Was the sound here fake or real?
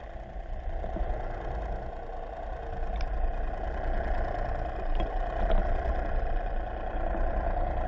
real